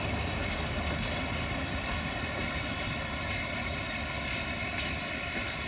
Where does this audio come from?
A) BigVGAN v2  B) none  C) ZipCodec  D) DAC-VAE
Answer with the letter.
A